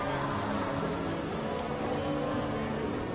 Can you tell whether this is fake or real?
real